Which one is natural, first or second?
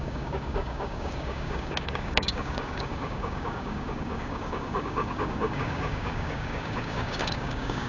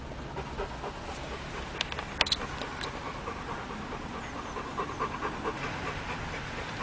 second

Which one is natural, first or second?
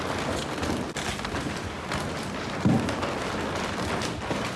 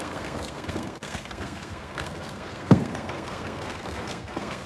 first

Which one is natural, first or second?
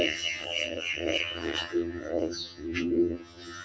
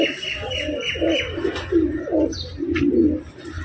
second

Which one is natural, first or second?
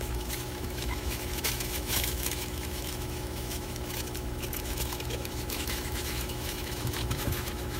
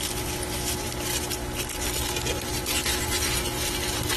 second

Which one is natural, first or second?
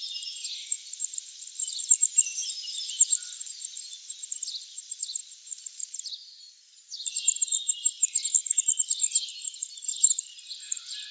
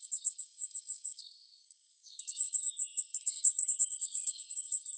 first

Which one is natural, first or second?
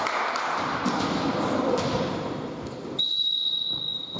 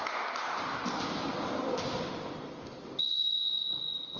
second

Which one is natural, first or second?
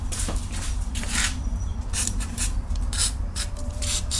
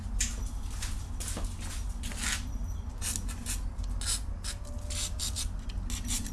second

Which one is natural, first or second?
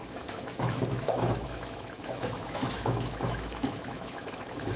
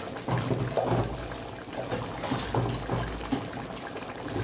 second